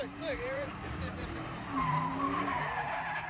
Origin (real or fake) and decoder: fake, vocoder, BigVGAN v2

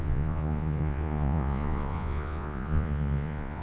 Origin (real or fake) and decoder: fake, vocoder, Vocos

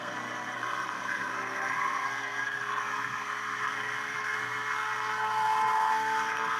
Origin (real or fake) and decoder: fake, codec, SNAC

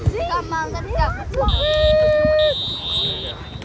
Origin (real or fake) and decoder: real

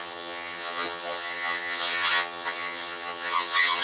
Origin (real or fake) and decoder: fake, vocoder, HiFi-GAN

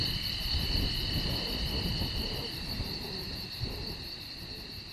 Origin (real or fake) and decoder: real